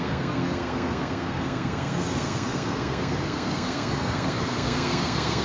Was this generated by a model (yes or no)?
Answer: yes